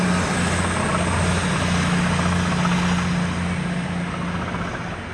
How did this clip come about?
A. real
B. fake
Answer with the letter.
A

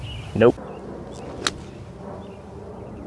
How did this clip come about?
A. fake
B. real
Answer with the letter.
B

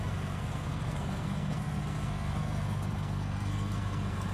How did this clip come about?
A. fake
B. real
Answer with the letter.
A